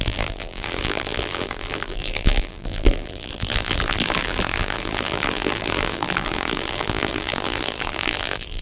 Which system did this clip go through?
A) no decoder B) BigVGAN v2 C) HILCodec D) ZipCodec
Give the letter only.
B